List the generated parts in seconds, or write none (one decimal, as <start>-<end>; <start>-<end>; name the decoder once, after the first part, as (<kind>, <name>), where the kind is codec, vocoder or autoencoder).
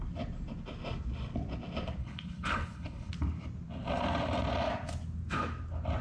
2.0-3.1 (codec, HILCodec)